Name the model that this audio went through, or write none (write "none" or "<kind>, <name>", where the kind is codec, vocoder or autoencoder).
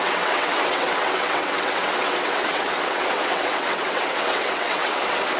vocoder, WaveNeXt